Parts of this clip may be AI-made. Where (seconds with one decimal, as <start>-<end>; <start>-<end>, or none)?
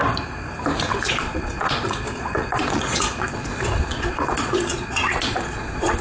1.0-6.0